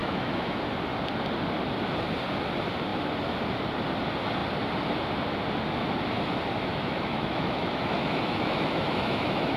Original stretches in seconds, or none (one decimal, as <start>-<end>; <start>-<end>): 0.6-6.7